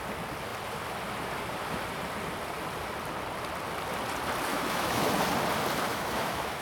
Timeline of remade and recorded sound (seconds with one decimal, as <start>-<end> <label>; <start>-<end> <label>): 0.0-4.5 recorded; 4.5-5.1 remade; 5.1-5.9 recorded; 5.9-6.6 remade